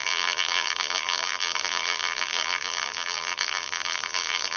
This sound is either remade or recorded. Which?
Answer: remade